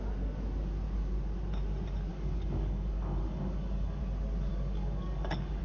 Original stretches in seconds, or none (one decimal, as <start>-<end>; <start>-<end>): 0.0-2.1; 4.0-4.5